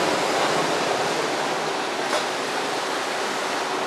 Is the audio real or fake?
real